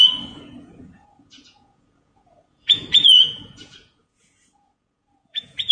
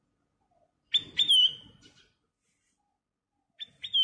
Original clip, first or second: second